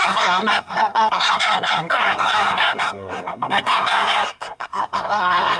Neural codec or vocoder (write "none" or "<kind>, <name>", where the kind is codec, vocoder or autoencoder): codec, SNAC